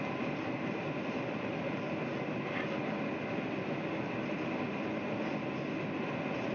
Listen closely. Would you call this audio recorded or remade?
recorded